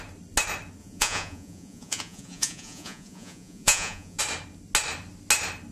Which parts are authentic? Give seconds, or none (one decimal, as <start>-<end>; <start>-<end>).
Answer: 0.0-0.8; 4.2-5.7